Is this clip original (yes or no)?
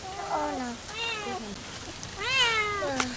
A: yes